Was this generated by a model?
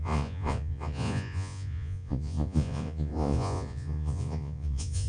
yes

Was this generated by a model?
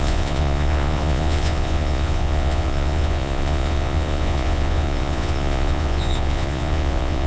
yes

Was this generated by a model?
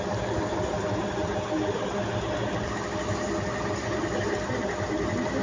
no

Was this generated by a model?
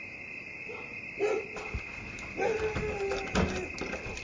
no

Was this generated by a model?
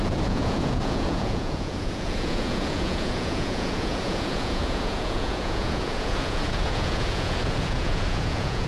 yes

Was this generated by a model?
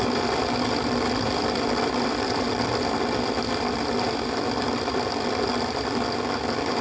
no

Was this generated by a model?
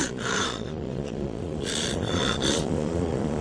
yes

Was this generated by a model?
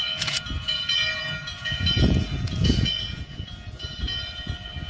yes